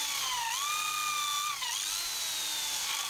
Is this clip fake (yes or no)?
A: no